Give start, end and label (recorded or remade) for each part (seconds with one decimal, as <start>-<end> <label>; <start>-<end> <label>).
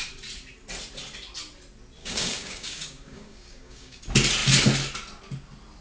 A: 0.0-2.0 recorded; 2.0-4.0 remade; 4.0-5.8 recorded